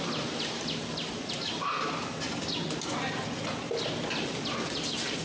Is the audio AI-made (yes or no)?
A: no